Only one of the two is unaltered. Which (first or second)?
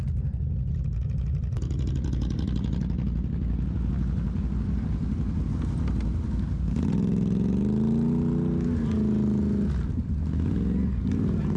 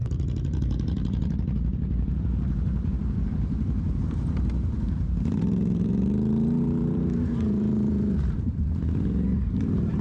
first